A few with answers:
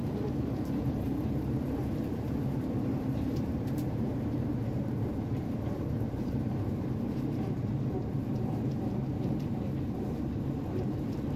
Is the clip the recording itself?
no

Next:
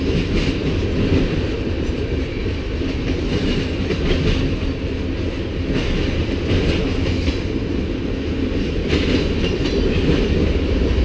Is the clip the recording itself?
yes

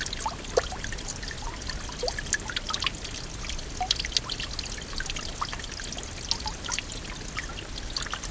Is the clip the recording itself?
yes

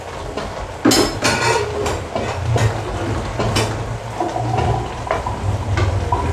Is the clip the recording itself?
yes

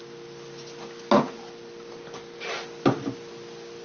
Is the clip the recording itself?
yes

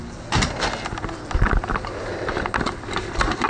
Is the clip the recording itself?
yes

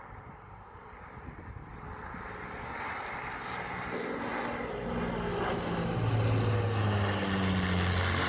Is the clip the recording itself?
yes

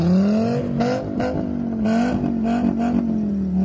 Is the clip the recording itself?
yes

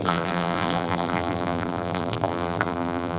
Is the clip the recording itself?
no